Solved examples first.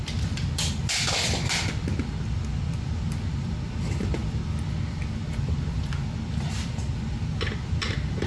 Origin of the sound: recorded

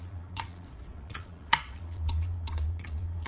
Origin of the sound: remade